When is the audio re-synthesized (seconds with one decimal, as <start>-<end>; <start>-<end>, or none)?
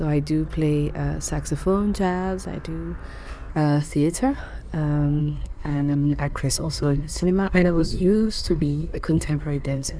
3.5-4.4; 5.2-10.0